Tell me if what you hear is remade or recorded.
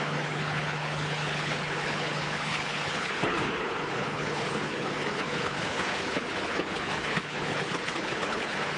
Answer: remade